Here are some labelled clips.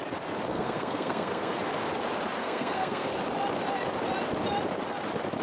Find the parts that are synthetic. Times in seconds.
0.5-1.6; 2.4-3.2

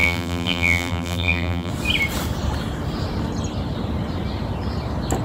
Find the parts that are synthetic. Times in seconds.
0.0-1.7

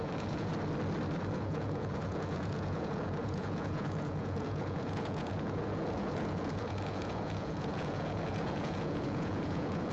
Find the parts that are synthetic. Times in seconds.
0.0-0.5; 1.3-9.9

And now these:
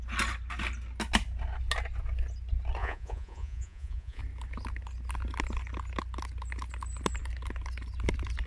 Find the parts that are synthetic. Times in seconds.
2.8-4.2